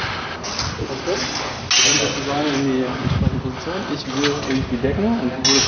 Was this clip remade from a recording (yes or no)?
no